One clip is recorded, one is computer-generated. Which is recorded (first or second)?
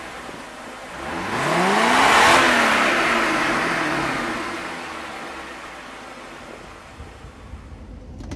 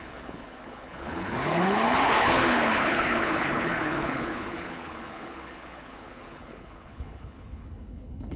first